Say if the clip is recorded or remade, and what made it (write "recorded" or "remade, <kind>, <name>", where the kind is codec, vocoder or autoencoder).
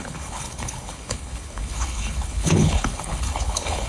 remade, codec, HILCodec